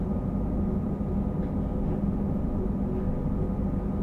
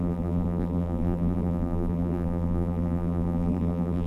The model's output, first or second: second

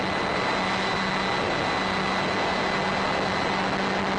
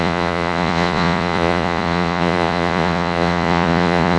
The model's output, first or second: second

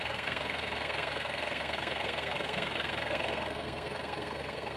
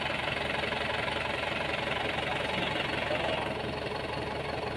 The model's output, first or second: first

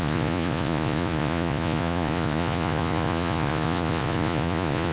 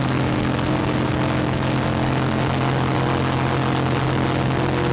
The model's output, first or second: first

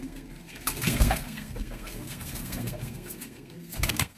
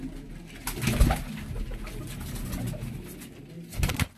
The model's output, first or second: first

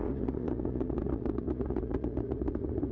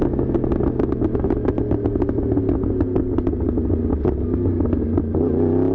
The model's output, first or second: first